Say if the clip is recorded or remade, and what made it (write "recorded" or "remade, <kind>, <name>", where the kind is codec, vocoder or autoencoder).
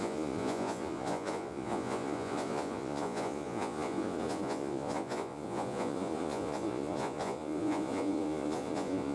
remade, vocoder, Vocos